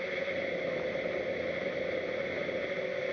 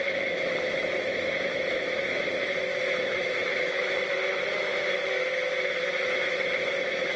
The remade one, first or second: second